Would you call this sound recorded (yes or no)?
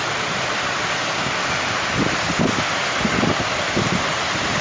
yes